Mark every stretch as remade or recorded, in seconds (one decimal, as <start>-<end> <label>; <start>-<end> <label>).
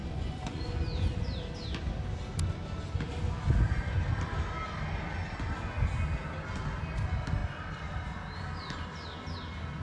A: 0.0-0.6 remade; 0.6-9.8 recorded